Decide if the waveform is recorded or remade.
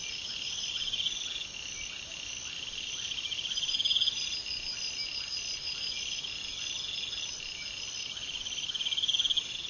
recorded